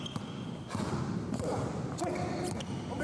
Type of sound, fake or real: real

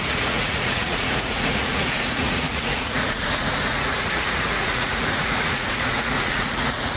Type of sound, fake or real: fake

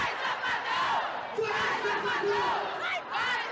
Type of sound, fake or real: real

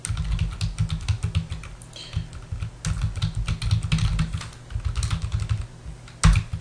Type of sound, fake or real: real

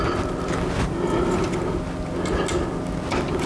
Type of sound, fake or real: real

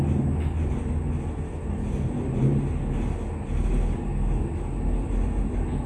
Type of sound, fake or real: real